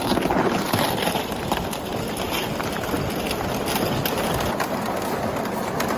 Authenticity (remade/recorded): recorded